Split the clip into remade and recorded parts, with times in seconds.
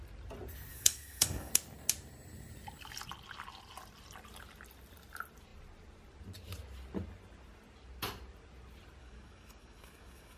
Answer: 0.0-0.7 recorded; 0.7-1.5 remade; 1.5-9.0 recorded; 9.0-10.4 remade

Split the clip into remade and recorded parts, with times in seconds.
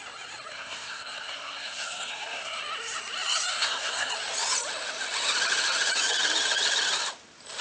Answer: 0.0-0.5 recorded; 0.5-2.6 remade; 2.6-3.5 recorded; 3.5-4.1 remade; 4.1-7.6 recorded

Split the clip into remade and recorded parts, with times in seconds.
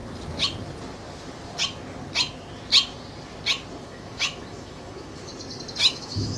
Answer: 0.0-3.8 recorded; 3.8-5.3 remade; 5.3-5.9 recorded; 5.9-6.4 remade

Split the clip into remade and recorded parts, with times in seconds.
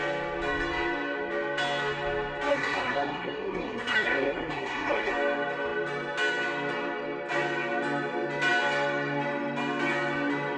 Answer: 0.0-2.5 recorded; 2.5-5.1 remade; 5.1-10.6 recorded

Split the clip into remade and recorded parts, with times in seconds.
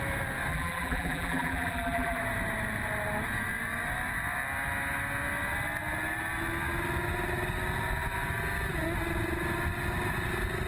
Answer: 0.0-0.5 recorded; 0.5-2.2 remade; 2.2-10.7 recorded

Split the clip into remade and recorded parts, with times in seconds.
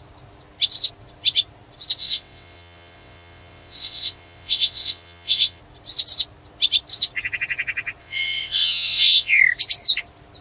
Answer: 0.0-2.0 recorded; 2.0-5.6 remade; 5.6-8.0 recorded; 8.0-9.4 remade; 9.4-10.4 recorded